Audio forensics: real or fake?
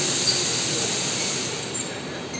real